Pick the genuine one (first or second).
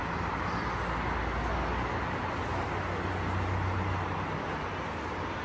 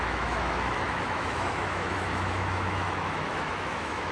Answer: first